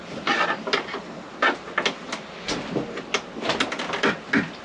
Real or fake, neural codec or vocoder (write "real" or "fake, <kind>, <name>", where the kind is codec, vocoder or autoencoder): real